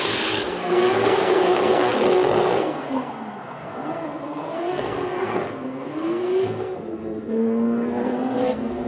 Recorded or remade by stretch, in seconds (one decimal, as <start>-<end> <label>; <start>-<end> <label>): 0.0-8.9 remade